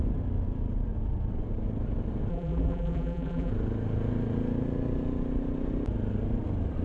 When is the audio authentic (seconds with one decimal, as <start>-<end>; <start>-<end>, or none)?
0.0-2.3; 3.5-6.8